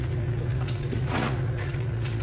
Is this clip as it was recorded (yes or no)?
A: no